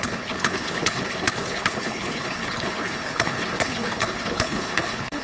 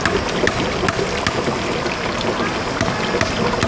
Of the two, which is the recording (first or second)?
second